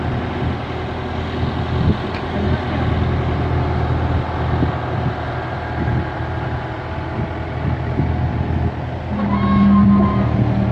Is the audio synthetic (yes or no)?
no